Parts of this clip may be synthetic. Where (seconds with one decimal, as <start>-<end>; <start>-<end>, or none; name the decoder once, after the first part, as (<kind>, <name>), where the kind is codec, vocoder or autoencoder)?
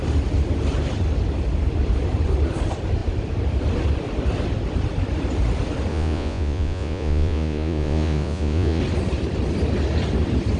5.9-8.8 (vocoder, Vocos)